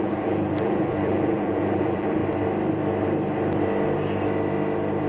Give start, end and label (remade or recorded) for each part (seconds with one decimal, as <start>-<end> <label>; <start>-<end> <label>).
0.0-2.2 remade; 2.2-5.1 recorded